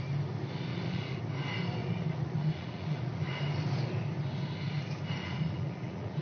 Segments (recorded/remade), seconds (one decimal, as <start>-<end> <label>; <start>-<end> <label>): 0.0-0.7 recorded; 0.7-1.2 remade; 1.2-1.8 recorded; 1.8-3.3 remade; 3.3-5.2 recorded; 5.2-6.2 remade